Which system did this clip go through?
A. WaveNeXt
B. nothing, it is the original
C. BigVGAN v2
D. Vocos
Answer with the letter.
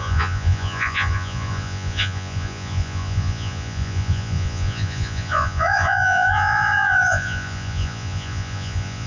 D